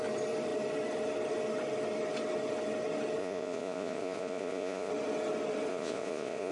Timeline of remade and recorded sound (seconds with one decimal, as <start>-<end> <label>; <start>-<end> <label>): 0.0-3.2 recorded; 3.2-4.9 remade; 4.9-5.7 recorded; 5.7-6.5 remade